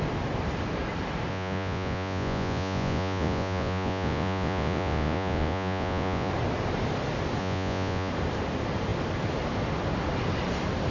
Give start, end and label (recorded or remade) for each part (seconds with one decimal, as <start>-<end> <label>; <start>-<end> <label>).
0.0-1.3 recorded; 1.3-6.3 remade; 6.3-7.4 recorded; 7.4-8.1 remade; 8.1-10.9 recorded